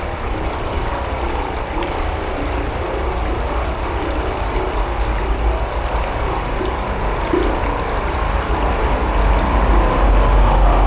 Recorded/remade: recorded